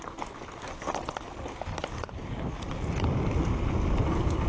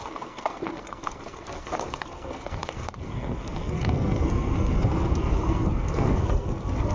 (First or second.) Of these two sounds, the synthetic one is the second